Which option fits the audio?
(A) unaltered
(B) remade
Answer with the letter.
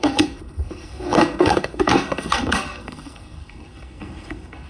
B